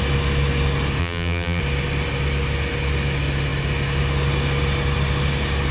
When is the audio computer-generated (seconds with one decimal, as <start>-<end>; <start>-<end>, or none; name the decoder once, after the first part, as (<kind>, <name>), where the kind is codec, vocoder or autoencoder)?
1.0-1.6 (vocoder, BigVGAN v2)